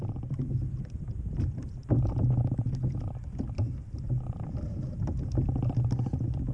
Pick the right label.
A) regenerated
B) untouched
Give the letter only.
B